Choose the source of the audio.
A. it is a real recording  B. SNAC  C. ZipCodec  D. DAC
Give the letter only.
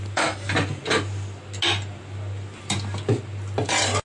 A